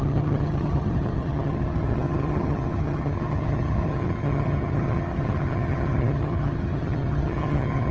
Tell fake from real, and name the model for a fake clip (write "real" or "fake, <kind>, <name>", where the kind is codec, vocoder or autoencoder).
fake, vocoder, HiFi-GAN